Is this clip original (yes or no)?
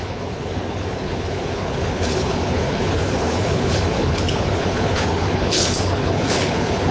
no